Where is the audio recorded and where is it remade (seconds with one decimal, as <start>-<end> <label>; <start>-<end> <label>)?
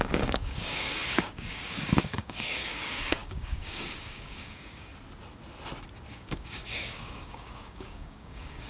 0.0-4.9 remade; 4.9-6.1 recorded; 6.1-8.7 remade